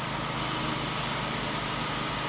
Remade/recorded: recorded